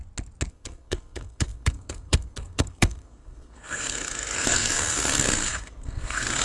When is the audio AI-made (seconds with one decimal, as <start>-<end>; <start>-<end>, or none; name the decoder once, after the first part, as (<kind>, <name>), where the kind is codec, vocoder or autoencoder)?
0.5-6.4 (codec, SNAC)